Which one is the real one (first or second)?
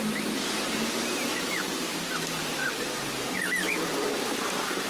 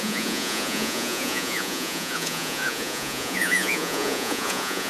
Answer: first